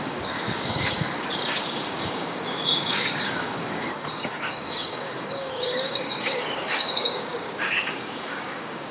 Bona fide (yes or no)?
no